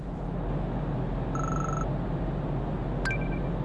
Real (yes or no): yes